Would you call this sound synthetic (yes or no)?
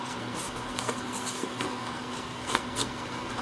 yes